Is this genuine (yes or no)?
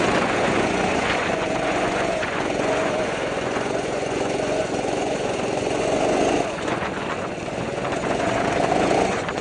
no